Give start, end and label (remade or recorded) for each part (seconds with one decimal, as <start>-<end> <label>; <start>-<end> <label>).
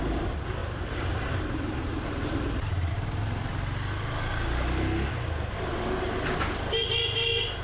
0.0-0.6 recorded; 0.6-2.9 remade; 2.9-7.6 recorded